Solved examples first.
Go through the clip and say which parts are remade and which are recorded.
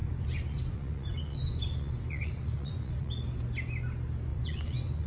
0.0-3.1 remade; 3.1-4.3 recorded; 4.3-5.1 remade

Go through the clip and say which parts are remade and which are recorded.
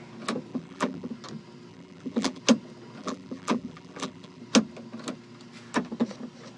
0.0-0.5 recorded; 0.5-1.1 remade; 1.1-1.7 recorded; 1.7-2.4 remade; 2.4-3.0 recorded; 3.0-4.4 remade; 4.4-6.6 recorded